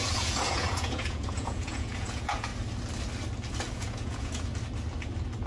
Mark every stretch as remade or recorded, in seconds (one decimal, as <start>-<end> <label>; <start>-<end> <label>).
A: 0.0-2.5 remade; 2.5-3.7 recorded; 3.7-4.5 remade; 4.5-5.5 recorded